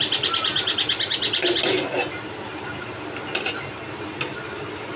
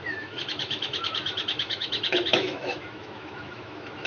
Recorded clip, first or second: first